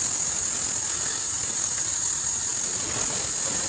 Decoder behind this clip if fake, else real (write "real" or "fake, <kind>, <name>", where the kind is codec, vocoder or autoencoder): real